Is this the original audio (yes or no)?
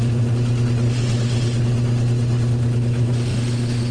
yes